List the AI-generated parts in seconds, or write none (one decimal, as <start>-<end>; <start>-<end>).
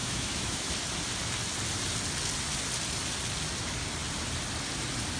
0.0-0.7